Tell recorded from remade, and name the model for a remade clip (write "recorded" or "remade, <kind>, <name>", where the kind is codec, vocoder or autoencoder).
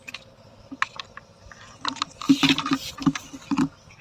recorded